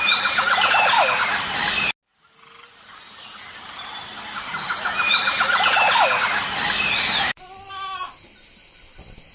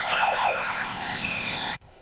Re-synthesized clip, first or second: second